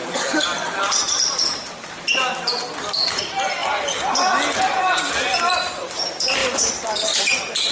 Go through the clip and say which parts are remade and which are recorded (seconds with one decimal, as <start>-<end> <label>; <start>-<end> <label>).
0.0-3.2 remade; 3.2-6.4 recorded; 6.4-7.3 remade; 7.3-7.7 recorded